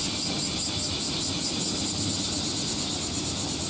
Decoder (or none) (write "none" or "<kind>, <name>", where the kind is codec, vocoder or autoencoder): none